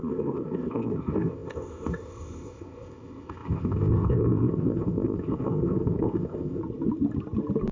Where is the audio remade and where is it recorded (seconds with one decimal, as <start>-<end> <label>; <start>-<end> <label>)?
0.0-6.6 remade; 6.6-7.7 recorded